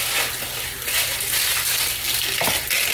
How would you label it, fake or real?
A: real